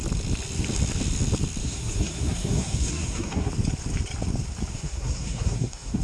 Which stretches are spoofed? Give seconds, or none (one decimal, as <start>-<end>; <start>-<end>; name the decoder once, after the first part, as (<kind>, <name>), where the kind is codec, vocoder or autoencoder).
1.6-3.5 (codec, SNAC); 4.7-6.0